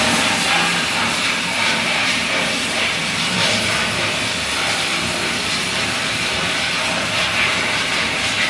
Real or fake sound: fake